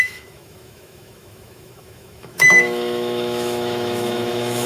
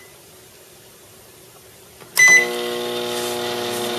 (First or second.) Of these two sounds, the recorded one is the second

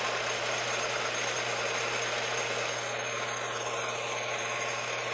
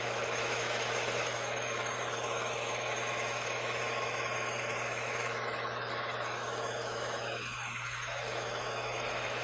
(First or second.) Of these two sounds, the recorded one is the first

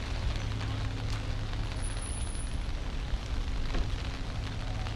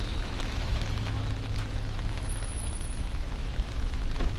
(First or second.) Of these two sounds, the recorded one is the first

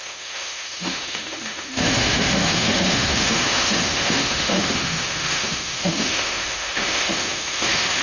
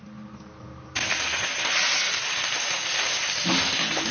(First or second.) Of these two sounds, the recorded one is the second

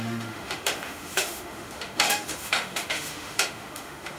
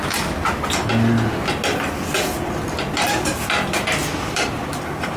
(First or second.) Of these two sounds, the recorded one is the second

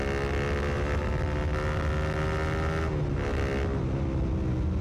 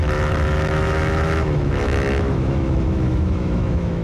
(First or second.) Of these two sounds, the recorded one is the first